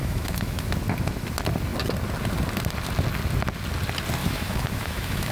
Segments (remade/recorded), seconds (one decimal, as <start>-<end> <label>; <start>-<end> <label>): 0.0-0.7 remade; 0.7-4.2 recorded; 4.2-5.3 remade